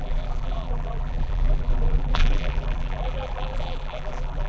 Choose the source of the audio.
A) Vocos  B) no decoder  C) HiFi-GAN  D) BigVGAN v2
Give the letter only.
D